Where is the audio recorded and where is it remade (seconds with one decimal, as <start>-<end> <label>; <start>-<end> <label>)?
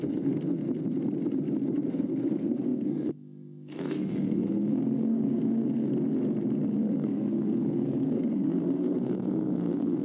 0.0-0.6 remade; 0.6-1.9 recorded; 1.9-5.9 remade; 5.9-6.8 recorded; 6.8-10.0 remade